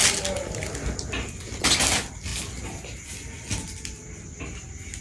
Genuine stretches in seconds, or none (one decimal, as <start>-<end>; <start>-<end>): 0.0-5.0